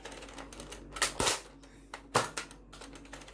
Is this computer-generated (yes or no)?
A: no